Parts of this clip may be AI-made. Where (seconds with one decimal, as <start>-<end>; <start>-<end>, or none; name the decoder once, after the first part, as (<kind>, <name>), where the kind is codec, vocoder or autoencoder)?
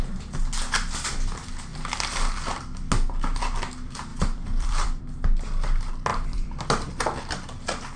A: 4.1-5.0 (vocoder, BigVGAN v2); 6.1-6.7